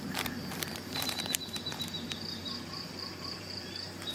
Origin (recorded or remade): remade